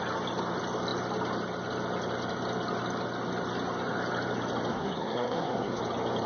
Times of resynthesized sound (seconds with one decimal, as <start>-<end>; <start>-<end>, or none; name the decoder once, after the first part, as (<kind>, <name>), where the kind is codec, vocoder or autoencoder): 4.7-5.8 (codec, SNAC)